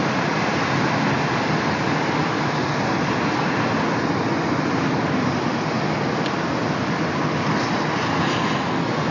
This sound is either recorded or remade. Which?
recorded